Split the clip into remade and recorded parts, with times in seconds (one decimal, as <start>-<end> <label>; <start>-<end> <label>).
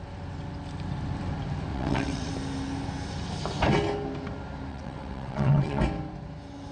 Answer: 0.0-1.7 recorded; 1.7-2.3 remade; 2.3-4.7 recorded; 4.7-5.8 remade; 5.8-6.7 recorded